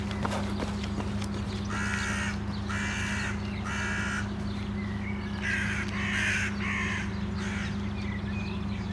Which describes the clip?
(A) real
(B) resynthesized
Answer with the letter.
A